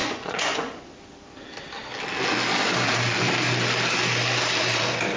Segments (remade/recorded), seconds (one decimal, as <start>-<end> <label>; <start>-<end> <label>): 0.0-0.8 remade; 0.8-5.2 recorded